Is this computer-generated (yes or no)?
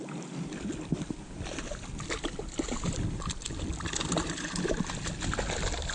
no